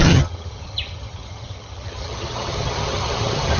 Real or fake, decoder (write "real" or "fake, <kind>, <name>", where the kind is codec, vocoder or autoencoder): fake, vocoder, HiFi-GAN